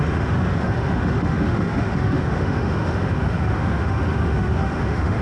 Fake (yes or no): yes